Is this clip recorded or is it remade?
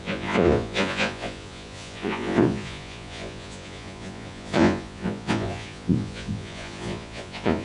remade